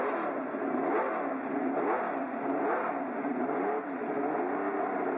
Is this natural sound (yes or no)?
yes